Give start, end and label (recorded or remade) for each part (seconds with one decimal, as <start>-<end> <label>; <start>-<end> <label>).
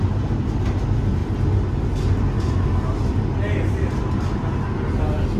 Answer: 0.0-5.4 recorded